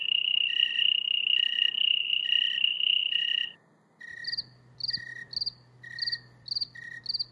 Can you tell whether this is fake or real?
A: real